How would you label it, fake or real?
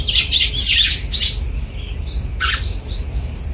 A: real